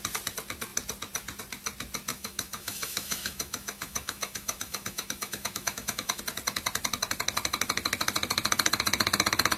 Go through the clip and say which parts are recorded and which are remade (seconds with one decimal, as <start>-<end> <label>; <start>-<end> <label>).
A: 0.0-2.1 recorded; 2.1-6.2 remade; 6.2-9.6 recorded